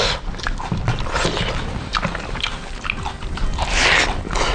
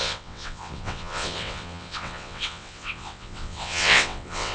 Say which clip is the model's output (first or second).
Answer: second